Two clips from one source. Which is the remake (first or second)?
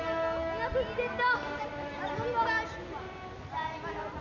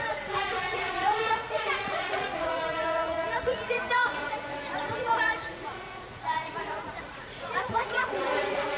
second